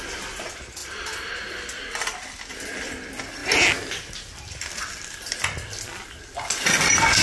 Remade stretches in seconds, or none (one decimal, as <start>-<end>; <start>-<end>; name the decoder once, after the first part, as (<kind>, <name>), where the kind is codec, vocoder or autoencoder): none